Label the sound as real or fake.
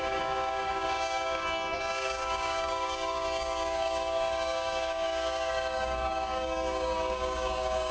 fake